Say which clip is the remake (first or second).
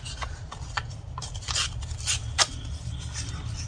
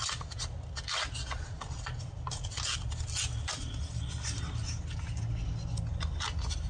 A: first